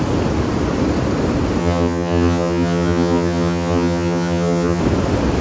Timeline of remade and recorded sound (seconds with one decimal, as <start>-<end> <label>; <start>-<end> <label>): 0.0-1.6 recorded; 1.6-4.8 remade; 4.8-5.4 recorded